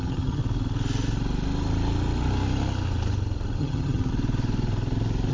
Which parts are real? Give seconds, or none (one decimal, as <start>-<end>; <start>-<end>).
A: 0.4-3.6; 4.1-5.3